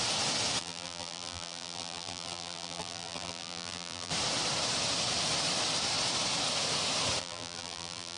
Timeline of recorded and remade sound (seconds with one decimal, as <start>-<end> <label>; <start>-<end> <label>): 0.0-0.6 recorded; 0.6-4.1 remade; 4.1-7.2 recorded; 7.2-8.2 remade